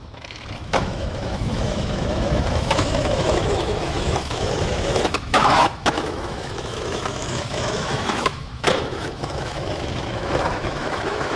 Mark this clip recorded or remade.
remade